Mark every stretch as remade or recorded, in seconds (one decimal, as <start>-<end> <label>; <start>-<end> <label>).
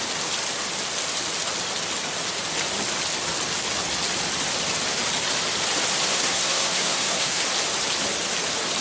0.0-6.1 recorded; 6.1-7.4 remade; 7.4-8.8 recorded